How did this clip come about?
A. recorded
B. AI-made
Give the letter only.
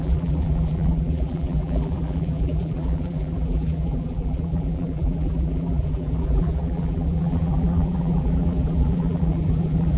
B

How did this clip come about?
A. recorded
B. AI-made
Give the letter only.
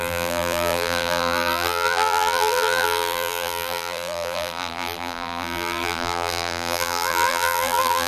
B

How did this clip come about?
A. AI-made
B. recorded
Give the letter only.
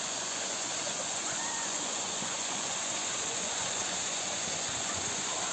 A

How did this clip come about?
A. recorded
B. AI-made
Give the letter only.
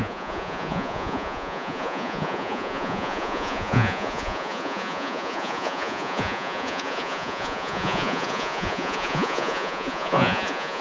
B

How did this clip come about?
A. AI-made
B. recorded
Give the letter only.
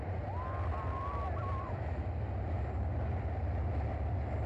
B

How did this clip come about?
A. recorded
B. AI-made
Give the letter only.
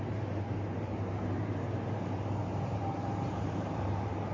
B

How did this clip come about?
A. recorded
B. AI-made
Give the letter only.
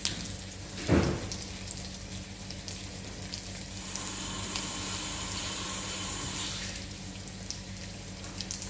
A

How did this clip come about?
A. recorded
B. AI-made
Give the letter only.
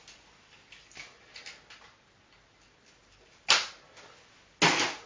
A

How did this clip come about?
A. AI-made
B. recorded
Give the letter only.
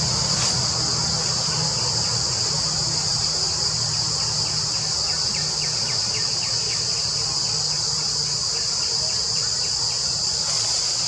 B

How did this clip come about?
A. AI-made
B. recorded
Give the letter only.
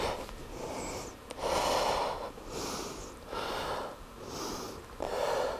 B